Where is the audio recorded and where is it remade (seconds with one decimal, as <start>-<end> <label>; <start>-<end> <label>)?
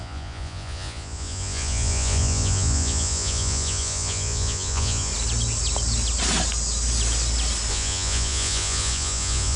0.0-5.1 remade; 5.1-7.7 recorded; 7.7-9.6 remade